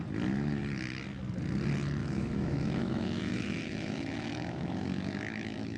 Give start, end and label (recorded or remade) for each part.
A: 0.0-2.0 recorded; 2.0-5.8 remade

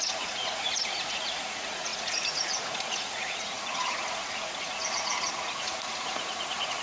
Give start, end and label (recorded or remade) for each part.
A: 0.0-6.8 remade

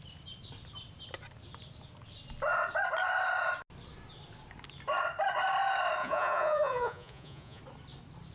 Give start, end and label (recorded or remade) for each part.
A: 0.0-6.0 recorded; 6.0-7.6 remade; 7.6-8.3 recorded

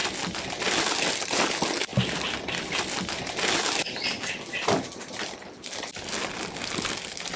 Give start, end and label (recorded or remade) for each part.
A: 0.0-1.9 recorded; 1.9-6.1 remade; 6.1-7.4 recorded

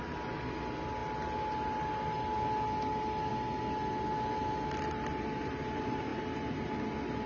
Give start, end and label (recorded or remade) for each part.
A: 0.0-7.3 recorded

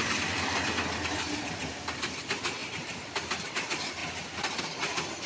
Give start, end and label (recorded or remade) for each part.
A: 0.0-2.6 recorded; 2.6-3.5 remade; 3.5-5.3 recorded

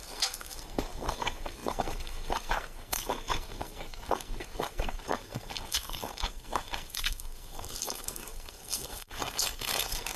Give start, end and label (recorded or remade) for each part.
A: 0.0-10.2 remade